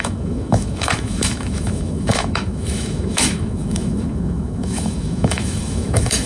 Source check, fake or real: fake